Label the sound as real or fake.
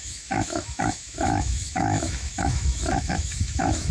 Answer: fake